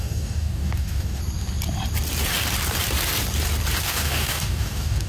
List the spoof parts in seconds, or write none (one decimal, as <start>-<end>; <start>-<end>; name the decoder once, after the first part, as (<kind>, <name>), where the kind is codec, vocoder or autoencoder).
0.0-1.2 (codec, DAC); 3.8-5.1